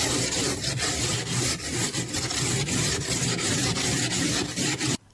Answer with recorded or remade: remade